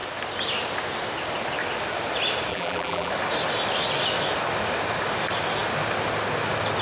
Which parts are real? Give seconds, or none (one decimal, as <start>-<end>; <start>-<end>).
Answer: 0.0-2.5; 3.1-6.8